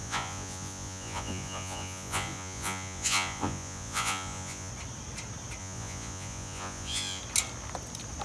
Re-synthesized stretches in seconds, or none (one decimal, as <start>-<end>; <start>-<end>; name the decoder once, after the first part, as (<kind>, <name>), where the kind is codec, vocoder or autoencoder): 0.0-4.7 (vocoder, Vocos); 5.6-7.2